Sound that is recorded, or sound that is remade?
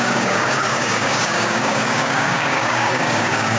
remade